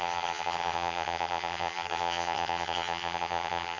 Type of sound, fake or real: fake